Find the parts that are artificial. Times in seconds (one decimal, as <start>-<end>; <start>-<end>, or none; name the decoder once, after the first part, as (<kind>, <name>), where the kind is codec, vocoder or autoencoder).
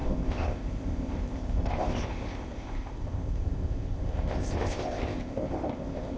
0.0-6.2 (codec, ZipCodec)